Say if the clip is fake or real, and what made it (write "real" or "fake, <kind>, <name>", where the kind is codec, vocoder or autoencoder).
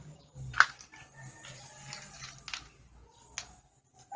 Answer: real